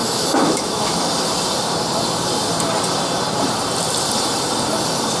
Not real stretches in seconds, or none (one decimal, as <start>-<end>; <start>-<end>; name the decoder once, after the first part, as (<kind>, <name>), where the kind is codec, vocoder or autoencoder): 0.0-1.1 (autoencoder, DAC-VAE)